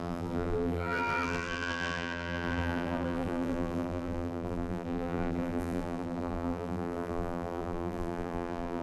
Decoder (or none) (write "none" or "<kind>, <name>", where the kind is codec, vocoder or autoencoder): vocoder, BigVGAN v2